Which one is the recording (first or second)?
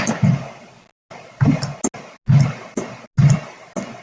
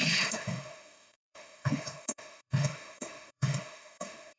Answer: first